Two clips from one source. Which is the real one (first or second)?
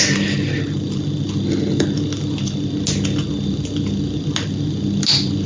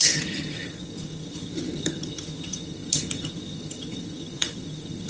first